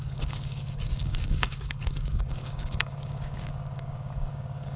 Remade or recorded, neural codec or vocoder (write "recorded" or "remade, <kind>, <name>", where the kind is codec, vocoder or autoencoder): remade, codec, DAC